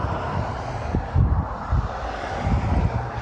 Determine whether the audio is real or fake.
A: real